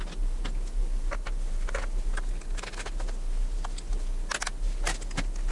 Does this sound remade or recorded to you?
recorded